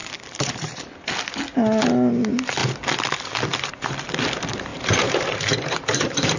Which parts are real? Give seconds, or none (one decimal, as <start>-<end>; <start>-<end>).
0.9-4.7